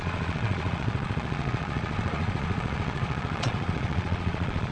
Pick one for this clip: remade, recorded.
remade